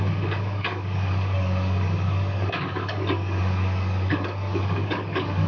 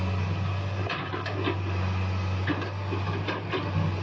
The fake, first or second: first